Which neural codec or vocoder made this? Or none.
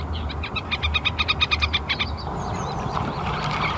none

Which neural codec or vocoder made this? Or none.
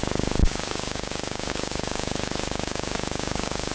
codec, DAC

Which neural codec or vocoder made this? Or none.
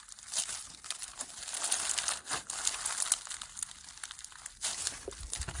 none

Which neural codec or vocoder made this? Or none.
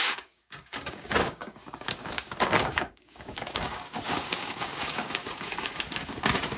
codec, DAC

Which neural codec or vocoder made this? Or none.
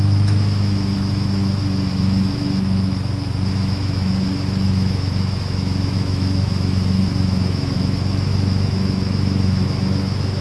autoencoder, DAC-VAE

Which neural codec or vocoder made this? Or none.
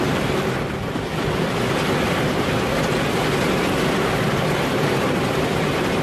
none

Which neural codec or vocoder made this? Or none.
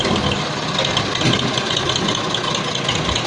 none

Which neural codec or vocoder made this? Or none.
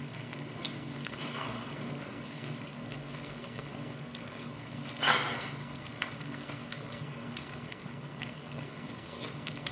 codec, SNAC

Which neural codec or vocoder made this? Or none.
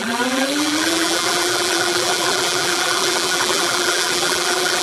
vocoder, BigVGAN v2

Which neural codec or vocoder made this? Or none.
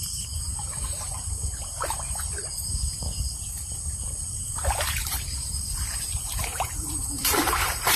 vocoder, BigVGAN v2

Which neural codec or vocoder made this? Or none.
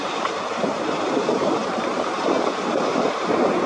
vocoder, BigVGAN v2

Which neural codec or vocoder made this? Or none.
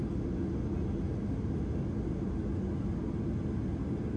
none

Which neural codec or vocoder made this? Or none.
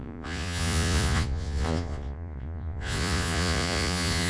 vocoder, Vocos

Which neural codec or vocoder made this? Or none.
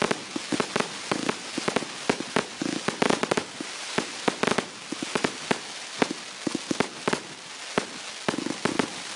none